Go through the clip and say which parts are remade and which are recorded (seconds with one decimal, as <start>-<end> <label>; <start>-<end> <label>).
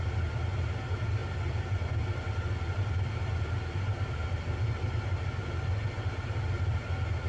0.0-7.3 recorded